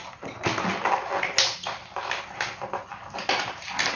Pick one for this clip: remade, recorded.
recorded